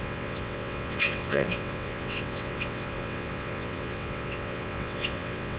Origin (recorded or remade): remade